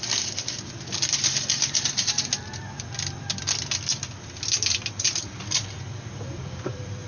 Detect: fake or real fake